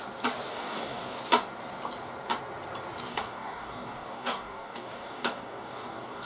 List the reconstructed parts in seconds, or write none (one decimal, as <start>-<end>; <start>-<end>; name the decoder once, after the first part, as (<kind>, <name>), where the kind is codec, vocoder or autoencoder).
0.5-1.2 (codec, DAC); 3.1-6.3